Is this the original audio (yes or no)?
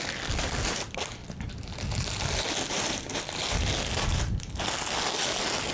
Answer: yes